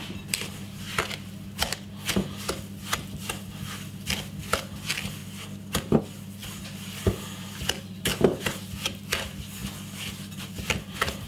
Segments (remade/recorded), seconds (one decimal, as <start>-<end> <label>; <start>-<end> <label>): 0.0-5.2 remade; 5.2-6.0 recorded; 6.0-9.6 remade; 9.6-10.4 recorded; 10.4-11.3 remade